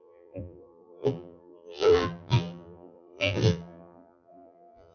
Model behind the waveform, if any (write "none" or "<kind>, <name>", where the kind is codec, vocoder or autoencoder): vocoder, BigVGAN v2